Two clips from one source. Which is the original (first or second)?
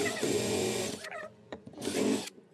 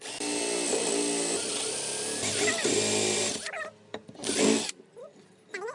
second